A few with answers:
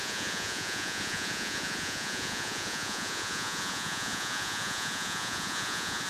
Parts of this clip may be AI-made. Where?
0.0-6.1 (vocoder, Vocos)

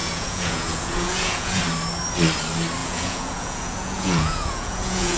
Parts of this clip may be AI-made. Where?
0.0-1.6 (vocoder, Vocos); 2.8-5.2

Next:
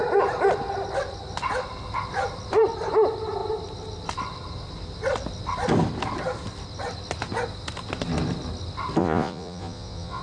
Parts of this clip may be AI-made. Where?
9.0-10.2 (vocoder, Vocos)

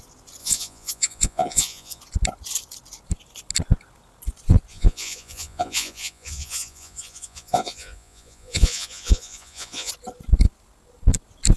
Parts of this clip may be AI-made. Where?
0.4-2.0 (vocoder, Vocos); 4.7-9.9

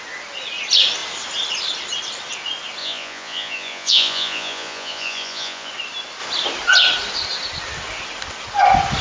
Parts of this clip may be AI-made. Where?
2.8-5.7 (vocoder, Vocos)

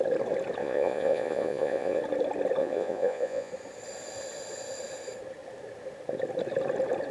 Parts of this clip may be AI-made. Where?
0.6-2.0 (vocoder, Vocos); 2.6-3.5

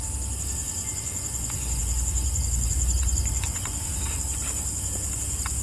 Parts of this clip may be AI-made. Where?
0.8-4.2 (vocoder, Vocos)